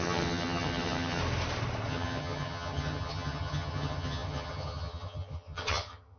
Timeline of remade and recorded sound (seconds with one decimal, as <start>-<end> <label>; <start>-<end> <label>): 0.0-1.2 remade; 1.2-1.9 recorded; 1.9-6.2 remade